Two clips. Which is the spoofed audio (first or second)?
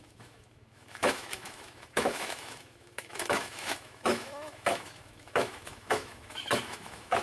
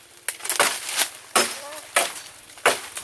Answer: first